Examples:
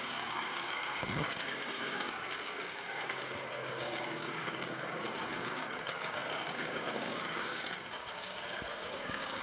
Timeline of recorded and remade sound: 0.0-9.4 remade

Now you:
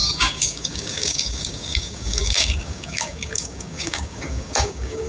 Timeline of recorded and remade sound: 0.0-5.1 remade

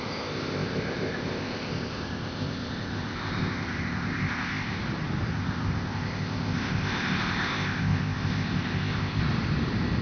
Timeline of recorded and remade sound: 0.0-4.8 remade; 4.8-5.3 recorded; 5.3-9.2 remade; 9.2-10.0 recorded